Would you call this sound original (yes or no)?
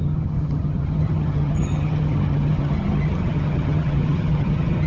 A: no